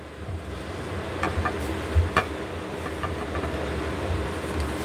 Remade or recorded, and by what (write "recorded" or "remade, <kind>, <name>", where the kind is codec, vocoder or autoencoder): recorded